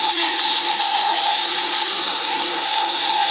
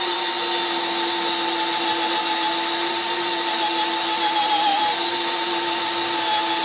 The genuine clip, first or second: second